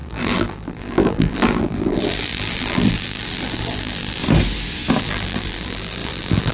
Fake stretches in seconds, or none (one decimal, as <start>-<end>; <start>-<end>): 0.0-4.2; 5.0-6.5